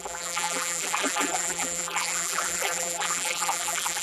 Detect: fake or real fake